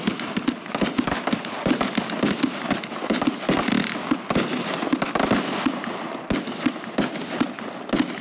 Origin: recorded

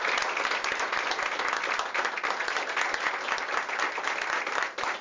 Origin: recorded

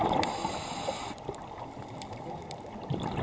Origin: recorded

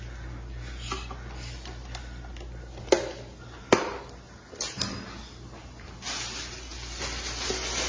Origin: recorded